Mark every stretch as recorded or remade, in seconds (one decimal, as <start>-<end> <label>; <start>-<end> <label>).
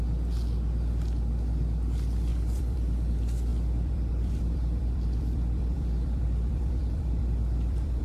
0.0-2.3 recorded; 2.3-3.1 remade; 3.1-3.5 recorded; 3.5-8.0 remade